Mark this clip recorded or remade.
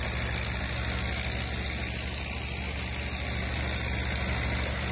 recorded